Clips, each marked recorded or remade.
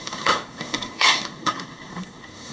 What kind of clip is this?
remade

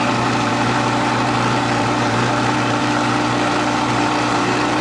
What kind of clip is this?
remade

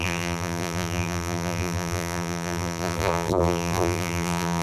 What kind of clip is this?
remade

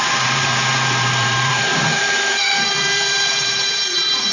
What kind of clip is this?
remade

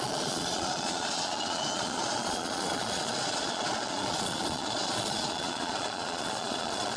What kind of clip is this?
remade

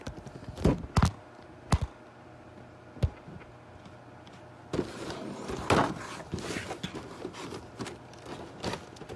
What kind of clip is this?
recorded